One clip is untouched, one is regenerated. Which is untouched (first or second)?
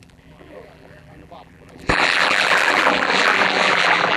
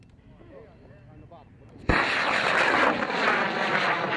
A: second